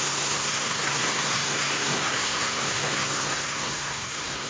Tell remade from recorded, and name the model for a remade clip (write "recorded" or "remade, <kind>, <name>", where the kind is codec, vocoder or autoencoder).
remade, codec, SNAC